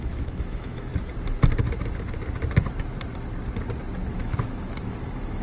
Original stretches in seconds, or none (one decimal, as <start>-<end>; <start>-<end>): 0.9-4.1